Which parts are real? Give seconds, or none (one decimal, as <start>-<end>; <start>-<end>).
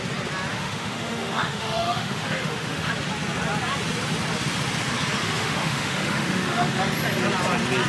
0.0-0.5; 2.9-5.2; 6.8-7.9